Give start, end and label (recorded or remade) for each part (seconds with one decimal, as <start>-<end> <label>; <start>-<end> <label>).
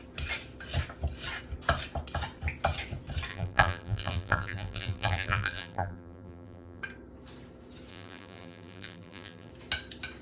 0.0-3.3 recorded; 3.3-6.8 remade; 6.8-7.9 recorded; 7.9-9.5 remade; 9.5-10.2 recorded